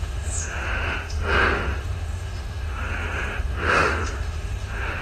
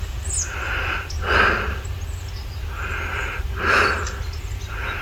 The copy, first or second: first